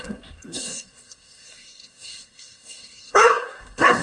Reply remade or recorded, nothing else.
remade